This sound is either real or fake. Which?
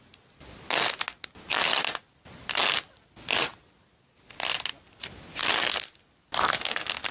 real